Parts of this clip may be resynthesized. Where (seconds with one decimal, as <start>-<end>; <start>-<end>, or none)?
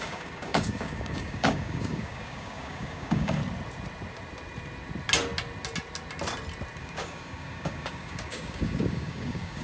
0.0-3.4; 6.8-9.6